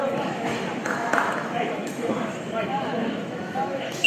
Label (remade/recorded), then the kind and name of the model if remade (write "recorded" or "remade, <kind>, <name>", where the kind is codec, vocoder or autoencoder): remade, autoencoder, DAC-VAE